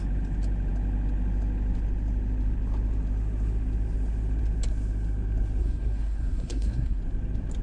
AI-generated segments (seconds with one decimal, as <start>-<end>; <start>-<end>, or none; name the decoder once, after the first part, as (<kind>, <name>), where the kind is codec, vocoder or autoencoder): 5.6-7.0 (codec, SNAC)